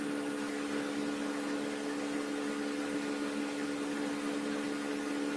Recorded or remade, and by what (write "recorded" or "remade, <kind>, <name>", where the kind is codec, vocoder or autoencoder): recorded